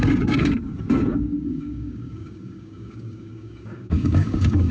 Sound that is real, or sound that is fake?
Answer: fake